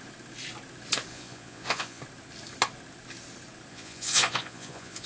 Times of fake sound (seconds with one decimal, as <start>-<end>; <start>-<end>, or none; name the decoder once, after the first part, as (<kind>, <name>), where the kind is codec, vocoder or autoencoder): 1.1-2.0 (vocoder, Vocos); 3.7-5.1